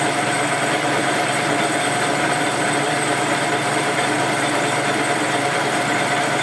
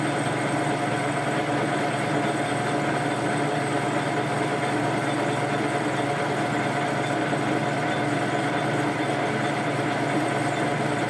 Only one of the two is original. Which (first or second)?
second